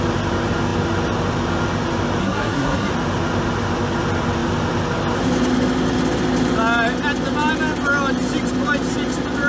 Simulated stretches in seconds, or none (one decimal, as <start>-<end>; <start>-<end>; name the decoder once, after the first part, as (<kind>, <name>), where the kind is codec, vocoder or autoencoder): 2.2-2.9 (codec, SNAC)